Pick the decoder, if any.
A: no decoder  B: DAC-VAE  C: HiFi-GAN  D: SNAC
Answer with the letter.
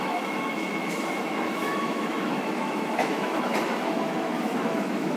B